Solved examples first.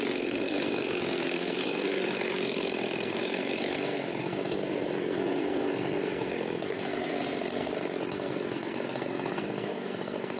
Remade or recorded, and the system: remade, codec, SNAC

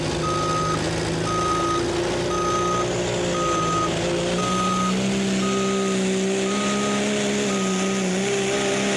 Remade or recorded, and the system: recorded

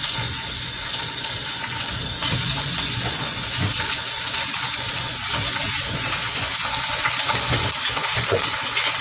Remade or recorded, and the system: remade, vocoder, Vocos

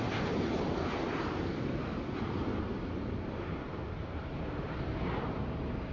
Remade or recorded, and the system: recorded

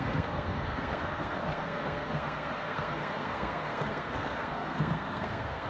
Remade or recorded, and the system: remade, codec, SNAC